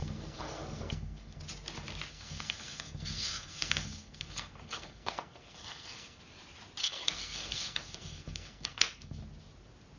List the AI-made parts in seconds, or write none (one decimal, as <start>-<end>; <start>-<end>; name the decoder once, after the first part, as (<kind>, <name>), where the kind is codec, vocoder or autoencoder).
0.0-1.4 (codec, SNAC); 2.1-6.2; 6.8-9.2